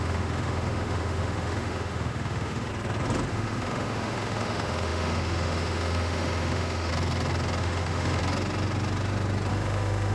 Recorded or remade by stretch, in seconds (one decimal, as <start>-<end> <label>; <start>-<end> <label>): 0.0-2.7 remade; 2.7-3.3 recorded; 3.3-6.9 remade; 6.9-7.6 recorded; 7.6-8.2 remade; 8.2-9.5 recorded; 9.5-10.1 remade